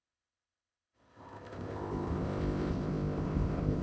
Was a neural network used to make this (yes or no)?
yes